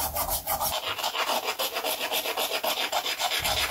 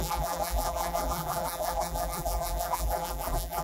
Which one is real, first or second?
first